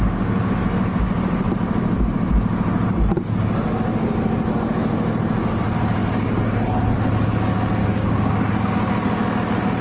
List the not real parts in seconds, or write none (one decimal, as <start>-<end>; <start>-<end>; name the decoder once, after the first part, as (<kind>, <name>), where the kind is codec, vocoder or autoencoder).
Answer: 7.8-8.7 (codec, DAC)